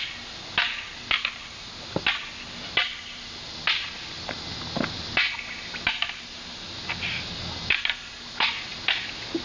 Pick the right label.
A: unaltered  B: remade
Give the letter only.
A